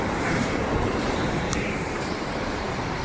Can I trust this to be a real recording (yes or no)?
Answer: no